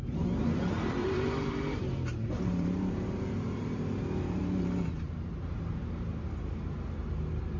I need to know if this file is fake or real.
fake